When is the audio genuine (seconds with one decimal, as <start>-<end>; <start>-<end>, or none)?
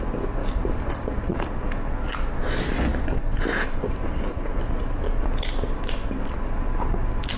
0.0-0.4; 1.2-2.9; 4.2-7.4